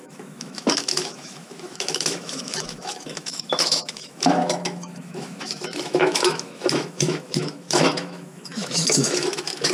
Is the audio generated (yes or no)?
yes